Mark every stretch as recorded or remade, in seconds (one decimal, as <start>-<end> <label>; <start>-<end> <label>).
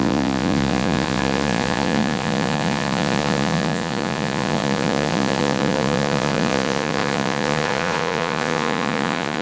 0.0-9.4 remade